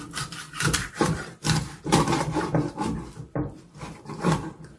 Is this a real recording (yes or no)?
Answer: no